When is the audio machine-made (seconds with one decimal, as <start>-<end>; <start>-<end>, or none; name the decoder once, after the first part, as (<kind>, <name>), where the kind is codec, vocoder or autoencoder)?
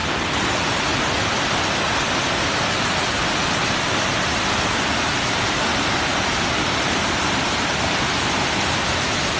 3.2-5.7 (vocoder, BigVGAN v2); 6.6-9.4